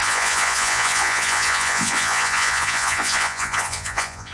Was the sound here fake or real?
fake